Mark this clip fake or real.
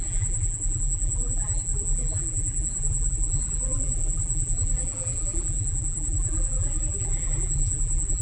fake